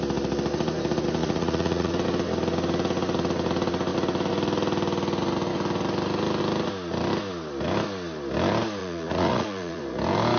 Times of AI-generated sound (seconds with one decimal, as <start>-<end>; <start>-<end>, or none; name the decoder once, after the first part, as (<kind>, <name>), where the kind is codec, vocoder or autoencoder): 1.2-1.9 (vocoder, Vocos); 8.8-9.8